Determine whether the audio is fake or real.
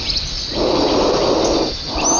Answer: real